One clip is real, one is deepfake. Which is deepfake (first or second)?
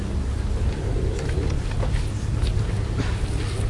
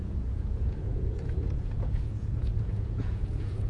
second